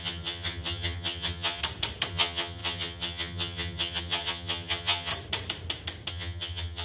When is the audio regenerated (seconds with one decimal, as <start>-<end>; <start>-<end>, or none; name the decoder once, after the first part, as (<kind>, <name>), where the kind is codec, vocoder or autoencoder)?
0.0-1.6 (vocoder, HiFi-GAN); 2.1-5.1; 6.1-6.8